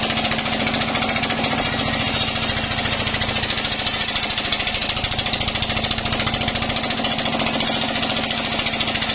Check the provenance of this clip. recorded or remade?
recorded